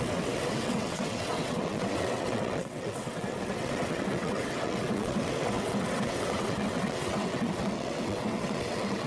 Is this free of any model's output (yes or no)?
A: no